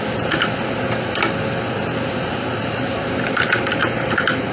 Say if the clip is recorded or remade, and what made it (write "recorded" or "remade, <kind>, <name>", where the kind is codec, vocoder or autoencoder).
remade, vocoder, BigVGAN v2